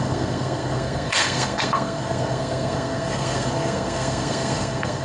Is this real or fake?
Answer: fake